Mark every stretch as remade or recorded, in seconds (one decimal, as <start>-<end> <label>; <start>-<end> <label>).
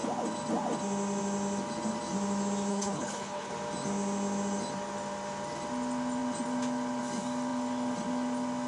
0.0-2.7 recorded; 2.7-3.5 remade; 3.5-8.7 recorded